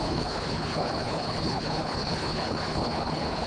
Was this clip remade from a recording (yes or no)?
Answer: yes